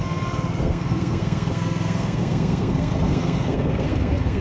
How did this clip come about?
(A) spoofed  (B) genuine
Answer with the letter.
A